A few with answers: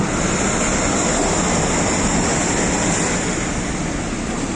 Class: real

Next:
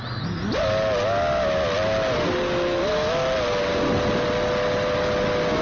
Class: real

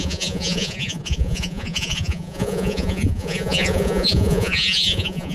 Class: fake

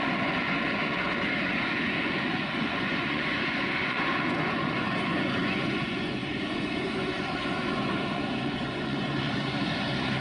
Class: fake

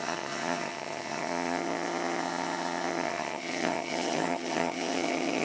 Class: fake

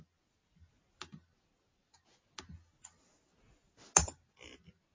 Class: real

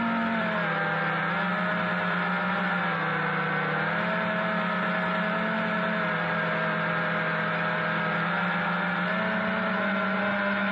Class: real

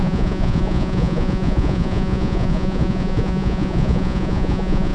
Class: fake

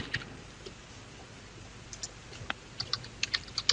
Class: real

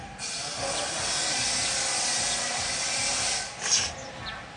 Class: real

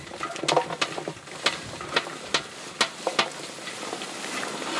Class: real